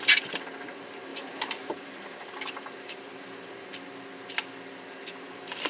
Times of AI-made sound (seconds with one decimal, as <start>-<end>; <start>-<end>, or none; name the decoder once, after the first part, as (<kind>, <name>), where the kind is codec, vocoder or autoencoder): 0.0-3.7 (vocoder, BigVGAN v2); 5.2-5.7